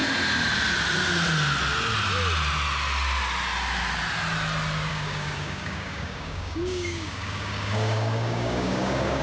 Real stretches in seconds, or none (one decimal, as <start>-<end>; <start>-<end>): 0.0-4.9